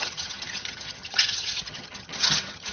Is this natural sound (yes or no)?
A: no